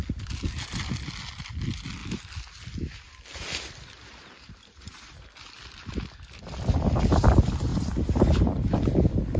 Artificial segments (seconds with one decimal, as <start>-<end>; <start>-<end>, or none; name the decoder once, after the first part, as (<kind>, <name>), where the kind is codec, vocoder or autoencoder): none